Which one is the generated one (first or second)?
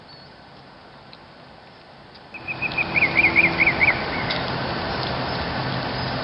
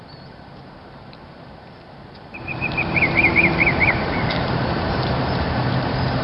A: second